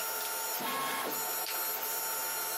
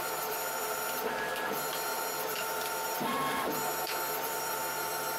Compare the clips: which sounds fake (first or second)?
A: second